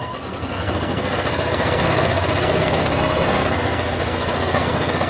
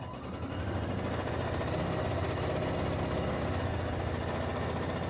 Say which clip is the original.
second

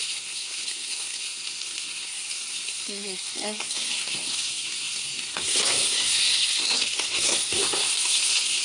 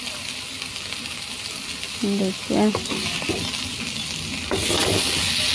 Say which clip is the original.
second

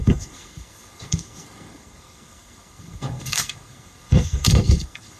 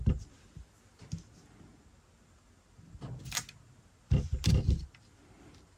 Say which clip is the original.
second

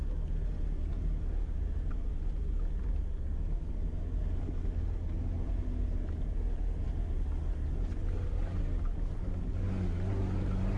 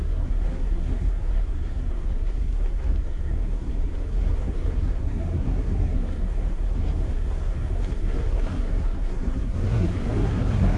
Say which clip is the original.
first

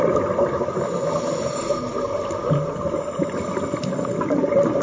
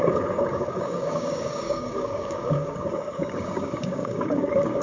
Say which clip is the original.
first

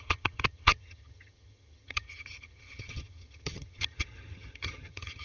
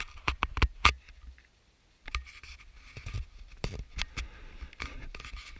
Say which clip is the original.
second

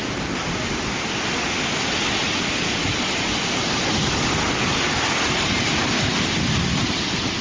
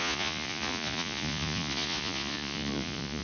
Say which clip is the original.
first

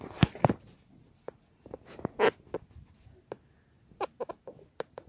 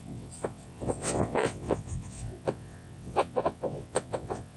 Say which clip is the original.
first